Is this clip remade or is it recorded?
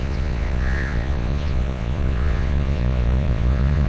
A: remade